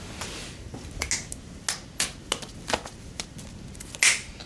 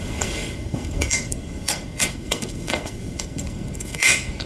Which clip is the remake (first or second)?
second